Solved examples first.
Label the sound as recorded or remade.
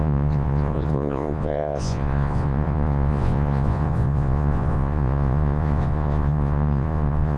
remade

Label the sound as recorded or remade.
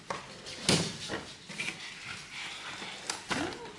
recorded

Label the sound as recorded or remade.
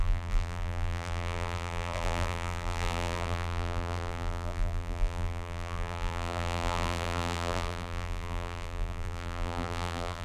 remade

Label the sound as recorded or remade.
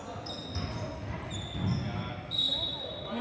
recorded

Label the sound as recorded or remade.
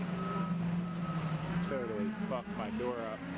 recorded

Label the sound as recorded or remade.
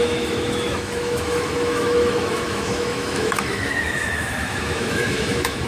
remade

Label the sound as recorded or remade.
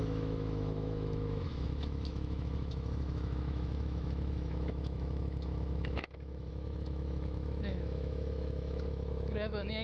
remade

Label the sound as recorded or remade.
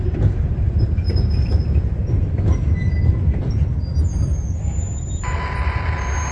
recorded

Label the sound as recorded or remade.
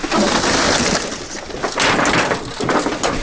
recorded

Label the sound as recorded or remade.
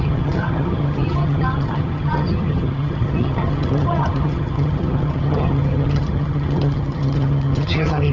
remade